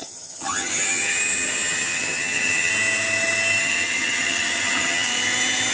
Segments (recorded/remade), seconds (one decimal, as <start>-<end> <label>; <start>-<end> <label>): 0.0-2.7 remade; 2.7-3.6 recorded; 3.6-5.1 remade; 5.1-5.7 recorded